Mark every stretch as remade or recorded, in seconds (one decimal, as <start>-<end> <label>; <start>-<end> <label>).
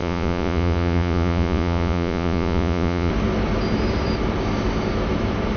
0.0-3.1 remade; 3.1-5.6 recorded